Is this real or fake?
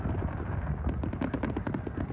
real